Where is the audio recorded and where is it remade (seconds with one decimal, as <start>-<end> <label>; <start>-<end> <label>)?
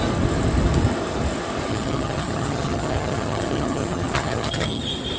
0.0-1.7 recorded; 1.7-4.8 remade; 4.8-5.2 recorded